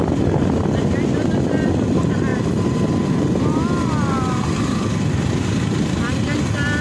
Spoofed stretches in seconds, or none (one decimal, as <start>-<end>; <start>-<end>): none